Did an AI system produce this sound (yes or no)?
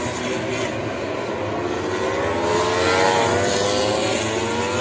no